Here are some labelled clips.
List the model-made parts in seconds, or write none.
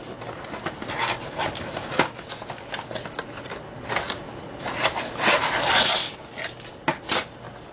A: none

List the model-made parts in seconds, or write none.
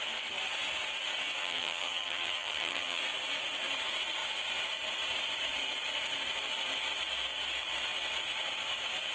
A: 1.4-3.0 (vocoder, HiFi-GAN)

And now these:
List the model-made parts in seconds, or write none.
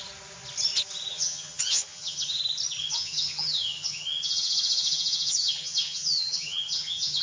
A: 1.1-2.4 (vocoder, HiFi-GAN); 2.8-7.2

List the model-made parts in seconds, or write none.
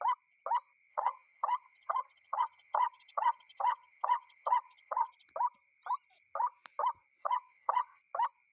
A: 0.9-5.1 (vocoder, HiFi-GAN); 7.2-8.0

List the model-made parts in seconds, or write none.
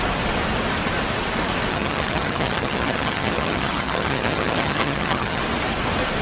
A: 1.7-5.4 (vocoder, HiFi-GAN)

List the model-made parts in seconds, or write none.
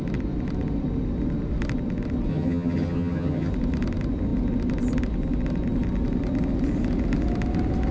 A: 2.3-3.5 (vocoder, HiFi-GAN)